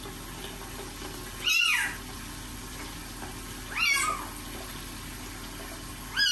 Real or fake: real